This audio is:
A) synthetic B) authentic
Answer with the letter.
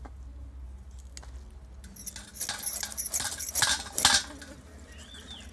B